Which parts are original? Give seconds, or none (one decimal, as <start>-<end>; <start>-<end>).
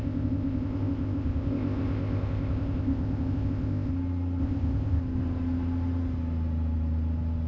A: 3.9-4.4; 5.0-7.5